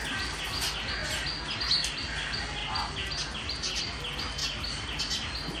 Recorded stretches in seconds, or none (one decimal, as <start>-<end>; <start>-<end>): 0.0-5.6